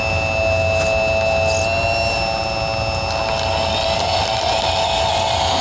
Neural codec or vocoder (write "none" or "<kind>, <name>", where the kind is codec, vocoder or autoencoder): none